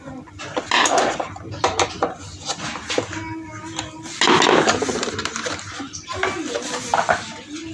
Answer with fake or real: real